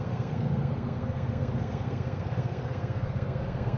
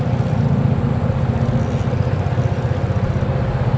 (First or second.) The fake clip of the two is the first